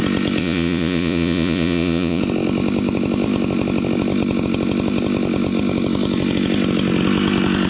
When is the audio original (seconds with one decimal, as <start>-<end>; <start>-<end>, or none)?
0.0-0.4; 2.2-7.7